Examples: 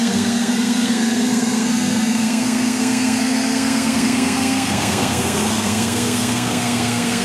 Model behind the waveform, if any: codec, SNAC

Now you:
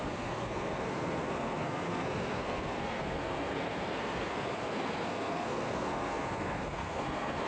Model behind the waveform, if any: codec, SNAC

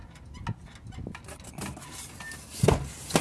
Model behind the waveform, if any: none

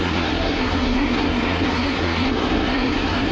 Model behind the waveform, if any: codec, SNAC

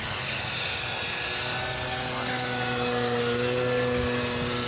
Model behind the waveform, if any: none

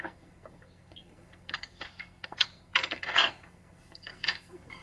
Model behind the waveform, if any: codec, SNAC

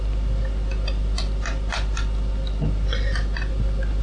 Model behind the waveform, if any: none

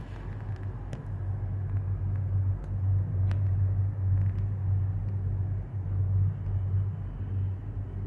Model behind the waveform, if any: none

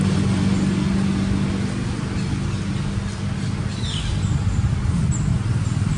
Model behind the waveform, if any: none